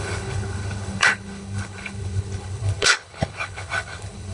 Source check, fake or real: fake